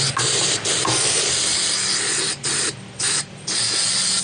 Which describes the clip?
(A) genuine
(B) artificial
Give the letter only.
A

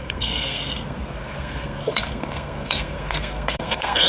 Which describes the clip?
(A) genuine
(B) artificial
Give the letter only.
B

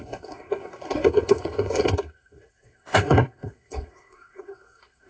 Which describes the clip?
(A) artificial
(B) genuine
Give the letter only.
A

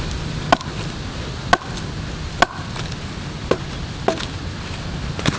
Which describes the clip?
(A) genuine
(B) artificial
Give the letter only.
A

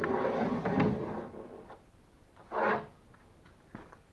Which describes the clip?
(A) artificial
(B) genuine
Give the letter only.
B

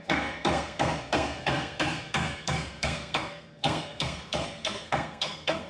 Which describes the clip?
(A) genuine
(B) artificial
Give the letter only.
B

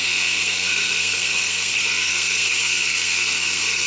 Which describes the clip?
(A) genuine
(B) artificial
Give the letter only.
B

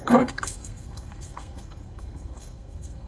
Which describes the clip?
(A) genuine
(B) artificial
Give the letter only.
B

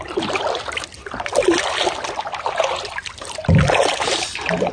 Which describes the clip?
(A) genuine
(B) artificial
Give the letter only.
A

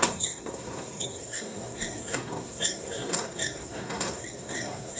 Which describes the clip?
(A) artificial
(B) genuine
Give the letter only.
A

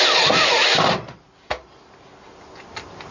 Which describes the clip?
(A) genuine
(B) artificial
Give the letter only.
A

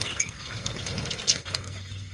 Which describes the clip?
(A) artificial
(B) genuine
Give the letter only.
A